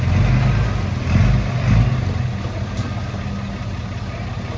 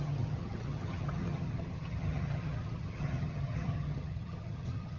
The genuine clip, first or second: first